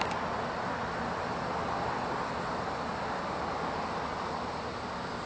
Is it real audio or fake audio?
real